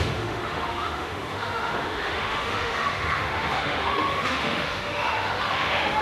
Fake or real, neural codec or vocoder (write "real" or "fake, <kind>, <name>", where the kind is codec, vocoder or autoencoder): fake, autoencoder, DAC-VAE